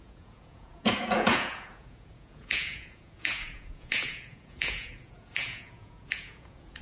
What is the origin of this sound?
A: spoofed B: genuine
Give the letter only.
A